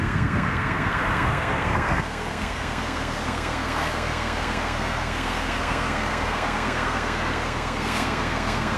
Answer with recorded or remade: remade